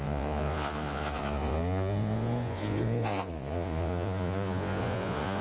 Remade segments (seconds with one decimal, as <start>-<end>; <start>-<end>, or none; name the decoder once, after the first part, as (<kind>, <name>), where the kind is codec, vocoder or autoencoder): 0.0-5.4 (vocoder, Vocos)